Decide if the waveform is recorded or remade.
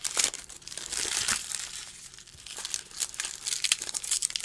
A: remade